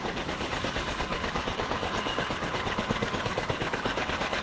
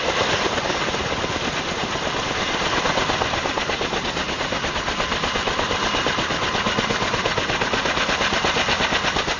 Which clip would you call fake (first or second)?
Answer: first